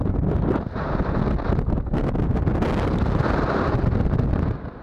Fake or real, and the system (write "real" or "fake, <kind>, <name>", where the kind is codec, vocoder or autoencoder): real